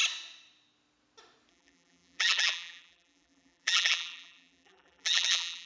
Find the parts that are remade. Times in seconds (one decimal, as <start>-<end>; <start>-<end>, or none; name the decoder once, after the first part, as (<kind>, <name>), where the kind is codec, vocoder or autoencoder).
1.5-5.7 (vocoder, BigVGAN v2)